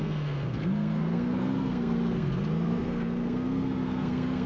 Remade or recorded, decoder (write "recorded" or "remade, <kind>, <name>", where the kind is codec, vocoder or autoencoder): remade, codec, SNAC